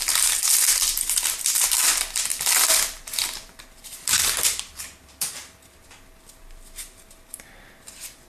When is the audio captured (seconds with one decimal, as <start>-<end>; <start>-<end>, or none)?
0.0-2.3; 4.8-8.3